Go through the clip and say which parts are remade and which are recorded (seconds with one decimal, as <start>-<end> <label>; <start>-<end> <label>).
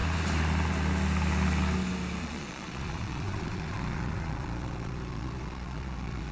0.0-2.2 recorded; 2.2-6.3 remade